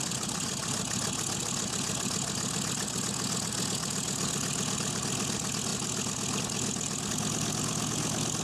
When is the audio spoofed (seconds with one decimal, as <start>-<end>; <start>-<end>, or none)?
none